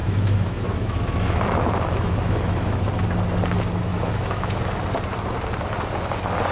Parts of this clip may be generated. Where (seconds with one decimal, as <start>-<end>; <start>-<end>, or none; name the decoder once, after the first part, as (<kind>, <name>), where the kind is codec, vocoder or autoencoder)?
0.0-2.8 (autoencoder, DAC-VAE); 3.9-4.6